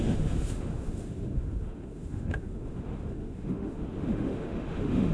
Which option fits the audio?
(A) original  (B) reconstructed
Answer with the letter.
B